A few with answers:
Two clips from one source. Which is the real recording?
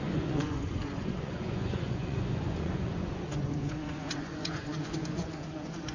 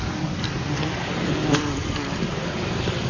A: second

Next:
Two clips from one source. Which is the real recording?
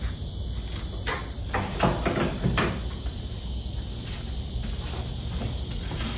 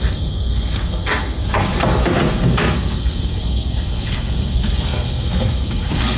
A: first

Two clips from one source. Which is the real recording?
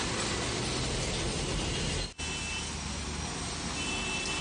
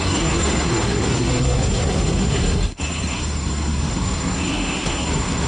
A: first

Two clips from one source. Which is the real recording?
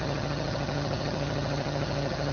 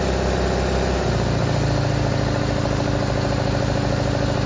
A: second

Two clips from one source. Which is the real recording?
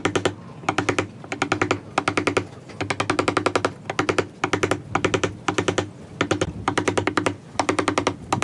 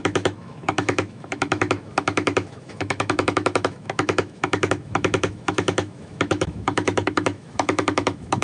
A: first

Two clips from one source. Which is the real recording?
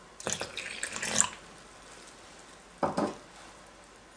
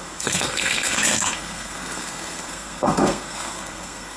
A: first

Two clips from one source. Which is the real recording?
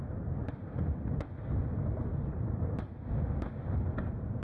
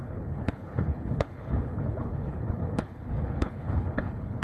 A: first